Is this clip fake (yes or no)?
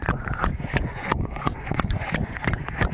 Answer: yes